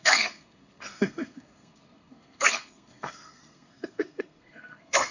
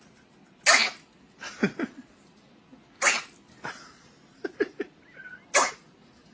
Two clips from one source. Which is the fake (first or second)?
first